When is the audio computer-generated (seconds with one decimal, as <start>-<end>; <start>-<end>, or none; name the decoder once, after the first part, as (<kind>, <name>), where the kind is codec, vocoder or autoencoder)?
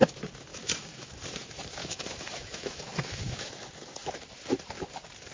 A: 0.5-1.1 (autoencoder, DAC-VAE); 1.8-3.5